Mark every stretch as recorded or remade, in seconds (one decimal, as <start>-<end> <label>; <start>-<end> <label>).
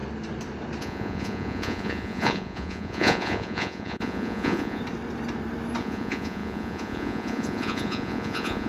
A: 0.0-0.8 recorded; 0.8-4.8 remade; 4.8-5.8 recorded; 5.8-8.7 remade